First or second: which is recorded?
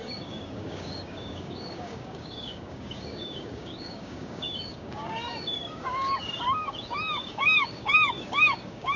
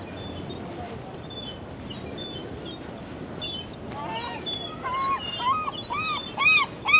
second